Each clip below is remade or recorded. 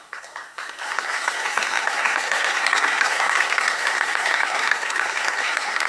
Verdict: remade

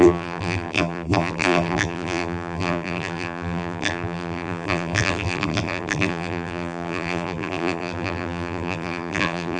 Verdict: remade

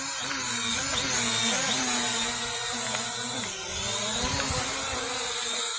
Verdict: recorded